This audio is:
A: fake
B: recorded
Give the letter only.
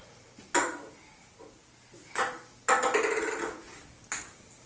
B